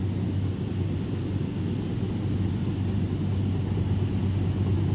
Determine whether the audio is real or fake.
real